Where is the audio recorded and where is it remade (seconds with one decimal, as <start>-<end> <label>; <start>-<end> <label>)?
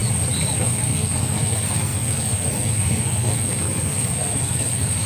0.0-0.6 recorded; 0.6-5.1 remade